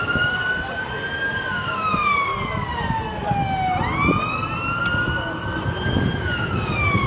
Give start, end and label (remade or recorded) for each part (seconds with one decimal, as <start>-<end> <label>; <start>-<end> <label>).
0.0-0.4 remade; 0.4-1.5 recorded; 1.5-2.3 remade; 2.3-6.2 recorded; 6.2-7.1 remade